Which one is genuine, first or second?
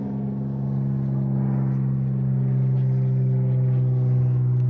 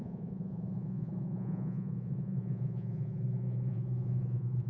first